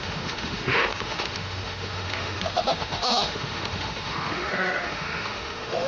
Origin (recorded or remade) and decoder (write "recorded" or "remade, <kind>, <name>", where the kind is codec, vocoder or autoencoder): remade, autoencoder, DAC-VAE